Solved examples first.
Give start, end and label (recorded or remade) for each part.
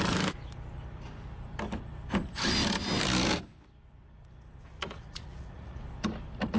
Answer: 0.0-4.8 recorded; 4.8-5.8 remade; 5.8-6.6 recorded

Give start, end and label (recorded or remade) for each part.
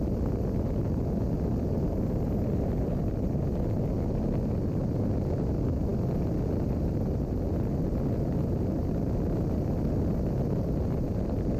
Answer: 0.0-11.6 recorded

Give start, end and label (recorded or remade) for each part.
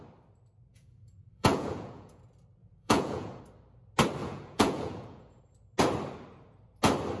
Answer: 0.0-0.7 recorded; 0.7-2.2 remade; 2.2-2.6 recorded; 2.6-3.4 remade; 3.4-4.2 recorded; 4.2-5.4 remade; 5.4-7.2 recorded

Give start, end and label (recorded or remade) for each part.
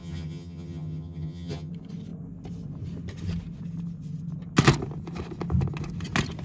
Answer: 0.0-1.7 remade; 1.7-6.4 recorded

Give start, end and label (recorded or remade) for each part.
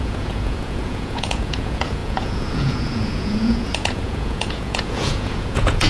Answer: 0.0-5.9 remade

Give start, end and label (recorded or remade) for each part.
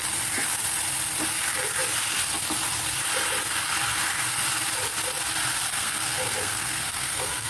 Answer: 0.0-5.7 recorded; 5.7-7.5 remade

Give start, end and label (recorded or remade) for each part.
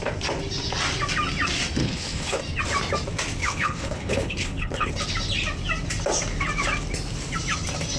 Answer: 0.0-1.8 recorded; 1.8-2.4 remade; 2.4-3.4 recorded; 3.4-4.9 remade; 4.9-8.0 recorded